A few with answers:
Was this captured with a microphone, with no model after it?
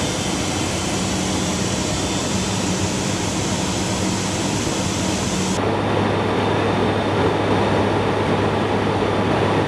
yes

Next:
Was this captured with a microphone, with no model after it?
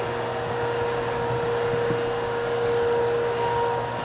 yes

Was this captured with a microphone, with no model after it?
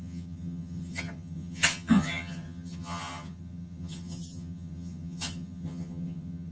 no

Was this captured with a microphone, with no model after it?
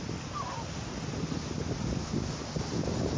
yes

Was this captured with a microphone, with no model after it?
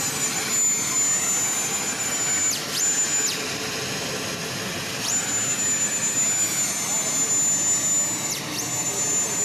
yes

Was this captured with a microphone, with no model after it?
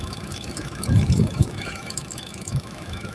no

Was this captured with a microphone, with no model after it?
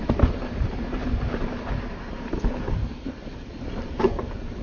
no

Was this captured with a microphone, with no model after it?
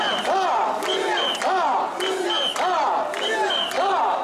yes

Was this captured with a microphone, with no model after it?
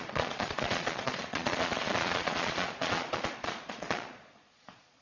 no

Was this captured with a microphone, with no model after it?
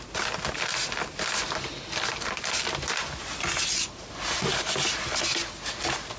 yes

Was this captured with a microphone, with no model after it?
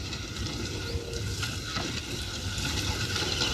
yes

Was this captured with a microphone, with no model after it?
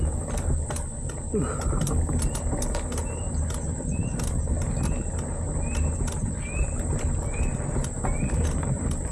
yes